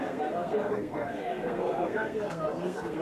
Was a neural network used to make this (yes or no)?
yes